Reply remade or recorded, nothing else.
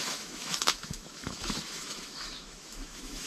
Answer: remade